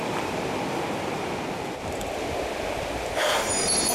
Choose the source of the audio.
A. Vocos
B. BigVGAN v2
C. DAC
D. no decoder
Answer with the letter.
D